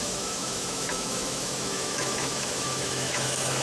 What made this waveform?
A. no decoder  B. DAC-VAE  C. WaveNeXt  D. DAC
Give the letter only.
B